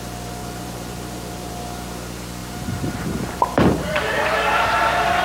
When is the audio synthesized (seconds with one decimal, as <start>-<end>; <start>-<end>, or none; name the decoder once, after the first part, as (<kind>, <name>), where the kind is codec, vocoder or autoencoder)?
0.4-1.5 (vocoder, BigVGAN v2); 2.4-5.2